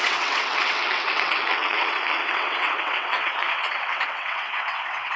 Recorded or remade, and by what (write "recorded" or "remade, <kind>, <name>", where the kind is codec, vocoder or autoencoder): remade, vocoder, WaveNeXt